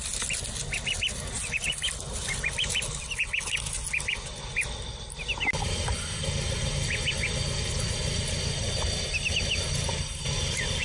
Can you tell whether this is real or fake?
real